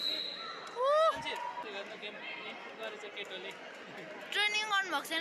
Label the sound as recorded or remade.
recorded